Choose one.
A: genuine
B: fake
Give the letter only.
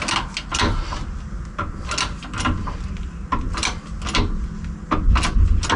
A